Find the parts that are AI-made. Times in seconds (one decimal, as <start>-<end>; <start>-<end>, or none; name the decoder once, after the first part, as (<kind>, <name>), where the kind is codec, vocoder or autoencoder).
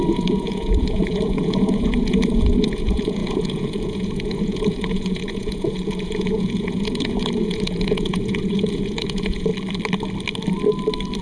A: 0.0-9.5 (vocoder, Vocos)